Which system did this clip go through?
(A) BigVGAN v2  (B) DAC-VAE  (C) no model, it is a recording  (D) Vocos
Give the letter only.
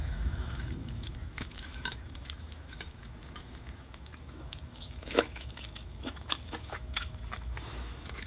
B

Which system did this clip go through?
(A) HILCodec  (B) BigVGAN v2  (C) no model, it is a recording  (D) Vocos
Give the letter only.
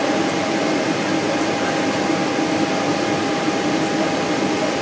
C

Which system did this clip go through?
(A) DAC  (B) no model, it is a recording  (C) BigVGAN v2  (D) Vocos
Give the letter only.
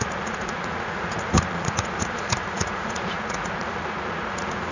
D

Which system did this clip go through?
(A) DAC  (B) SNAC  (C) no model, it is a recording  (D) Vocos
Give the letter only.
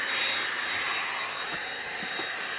C